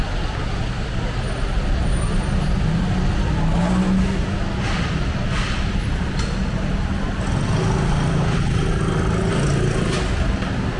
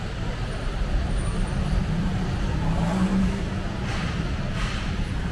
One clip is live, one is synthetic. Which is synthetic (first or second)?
second